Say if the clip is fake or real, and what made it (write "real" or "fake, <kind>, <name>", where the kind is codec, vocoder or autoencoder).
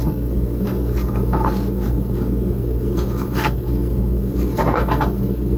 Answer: fake, codec, SNAC